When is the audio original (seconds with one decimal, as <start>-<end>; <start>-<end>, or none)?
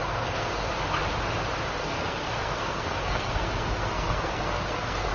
0.7-1.8